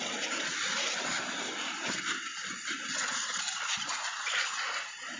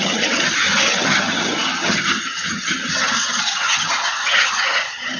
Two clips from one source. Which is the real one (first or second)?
first